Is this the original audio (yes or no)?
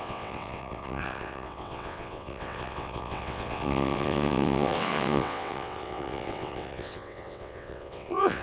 no